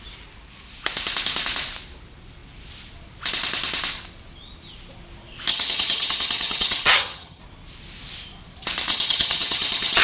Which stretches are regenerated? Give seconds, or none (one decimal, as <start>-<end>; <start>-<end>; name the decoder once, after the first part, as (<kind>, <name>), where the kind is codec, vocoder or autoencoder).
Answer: 5.5-7.4 (vocoder, HiFi-GAN); 8.9-10.0